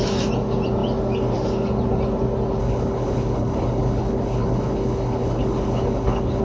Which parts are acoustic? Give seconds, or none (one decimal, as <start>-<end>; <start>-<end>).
0.0-2.6